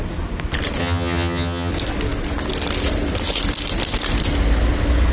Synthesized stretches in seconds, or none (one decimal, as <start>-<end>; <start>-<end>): 0.8-1.7